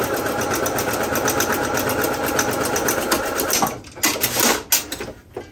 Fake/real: real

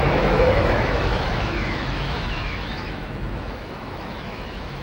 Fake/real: fake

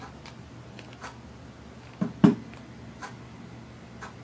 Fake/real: real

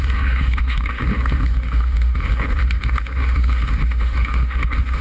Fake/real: fake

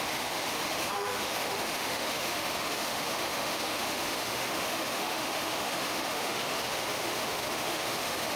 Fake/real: fake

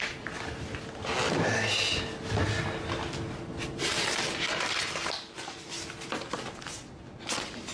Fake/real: real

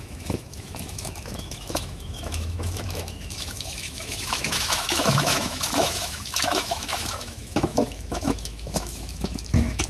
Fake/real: fake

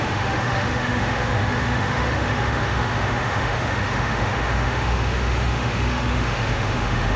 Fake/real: fake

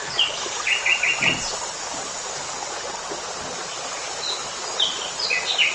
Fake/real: real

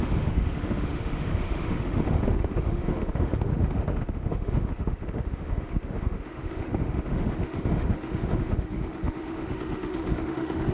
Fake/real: fake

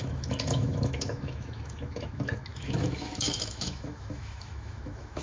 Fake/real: fake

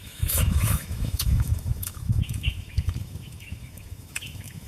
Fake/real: fake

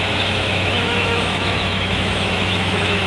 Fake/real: fake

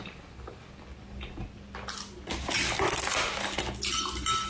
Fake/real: real